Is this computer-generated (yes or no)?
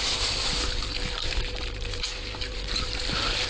yes